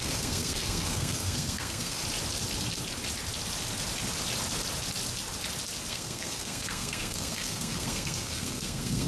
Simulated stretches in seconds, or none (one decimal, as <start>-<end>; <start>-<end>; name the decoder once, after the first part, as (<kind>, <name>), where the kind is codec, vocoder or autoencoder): 0.0-2.0 (codec, SNAC); 5.9-9.1